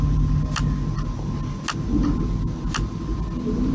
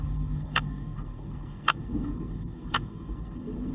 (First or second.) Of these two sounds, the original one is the first